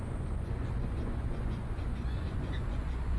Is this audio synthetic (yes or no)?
yes